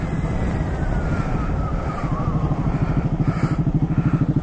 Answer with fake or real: real